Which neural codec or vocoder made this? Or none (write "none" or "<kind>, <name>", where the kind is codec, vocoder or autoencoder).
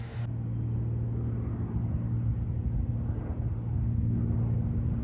none